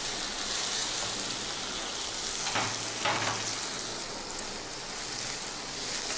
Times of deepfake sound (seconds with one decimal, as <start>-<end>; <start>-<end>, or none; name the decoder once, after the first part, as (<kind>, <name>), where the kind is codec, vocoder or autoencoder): none